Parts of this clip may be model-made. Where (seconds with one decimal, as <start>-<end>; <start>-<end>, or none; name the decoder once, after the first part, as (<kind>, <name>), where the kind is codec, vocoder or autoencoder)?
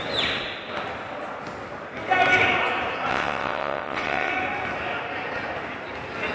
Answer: 3.1-4.3 (vocoder, WaveNeXt)